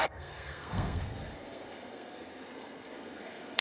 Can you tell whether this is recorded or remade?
remade